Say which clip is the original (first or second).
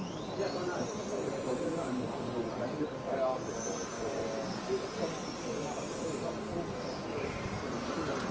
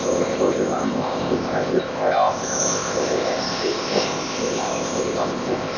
first